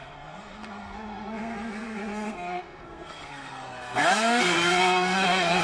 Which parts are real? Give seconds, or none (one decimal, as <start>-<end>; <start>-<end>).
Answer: none